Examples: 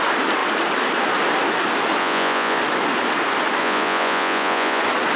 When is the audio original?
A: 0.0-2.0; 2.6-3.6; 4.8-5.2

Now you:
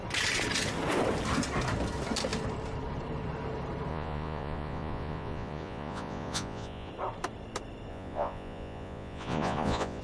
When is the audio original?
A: 0.0-3.9; 6.9-7.9

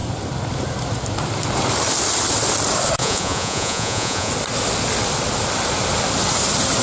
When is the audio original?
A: 0.0-3.0; 4.3-6.8

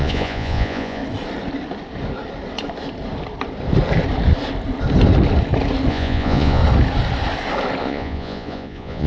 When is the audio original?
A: 1.0-5.9; 6.6-7.8